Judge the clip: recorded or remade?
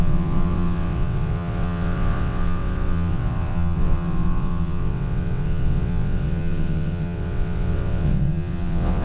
remade